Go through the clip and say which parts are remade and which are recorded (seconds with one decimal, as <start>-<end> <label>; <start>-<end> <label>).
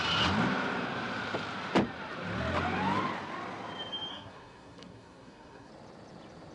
0.0-4.1 recorded; 4.1-5.7 remade; 5.7-6.5 recorded